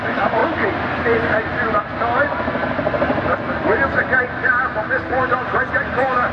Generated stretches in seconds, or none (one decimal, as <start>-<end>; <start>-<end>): none

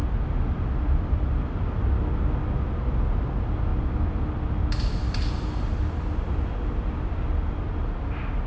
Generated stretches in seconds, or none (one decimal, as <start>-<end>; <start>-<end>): none

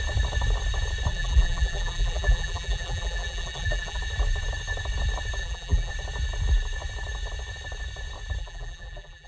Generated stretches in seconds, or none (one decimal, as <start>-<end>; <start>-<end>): 1.1-4.0; 5.4-5.9; 8.4-9.3

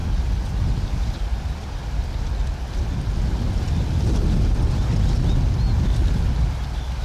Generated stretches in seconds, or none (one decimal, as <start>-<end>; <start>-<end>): 0.0-2.6